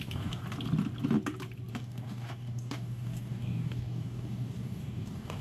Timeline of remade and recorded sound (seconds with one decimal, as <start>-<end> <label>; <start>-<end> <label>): 0.0-0.4 remade; 0.4-1.7 recorded; 1.7-5.4 remade